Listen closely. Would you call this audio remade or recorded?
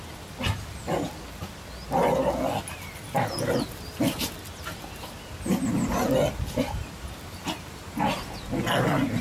recorded